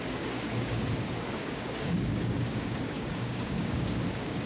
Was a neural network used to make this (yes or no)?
yes